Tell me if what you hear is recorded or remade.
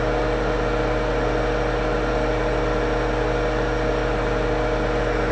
recorded